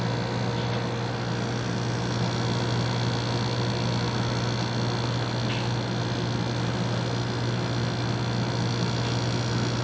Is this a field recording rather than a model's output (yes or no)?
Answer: yes